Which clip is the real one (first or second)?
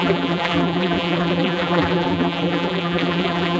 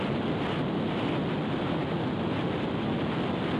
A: second